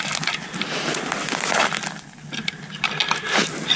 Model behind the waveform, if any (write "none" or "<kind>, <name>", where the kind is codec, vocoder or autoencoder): none